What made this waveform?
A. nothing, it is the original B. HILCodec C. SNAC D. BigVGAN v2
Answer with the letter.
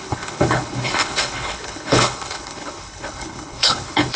B